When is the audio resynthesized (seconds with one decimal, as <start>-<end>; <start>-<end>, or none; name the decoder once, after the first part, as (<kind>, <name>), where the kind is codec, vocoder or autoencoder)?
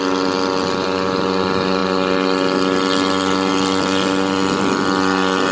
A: none